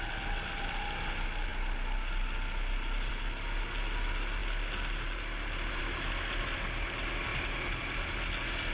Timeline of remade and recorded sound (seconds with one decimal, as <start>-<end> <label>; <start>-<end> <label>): 0.0-8.7 recorded